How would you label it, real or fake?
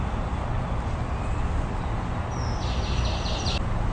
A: real